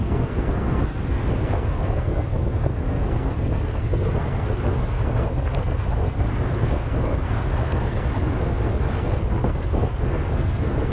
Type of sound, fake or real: fake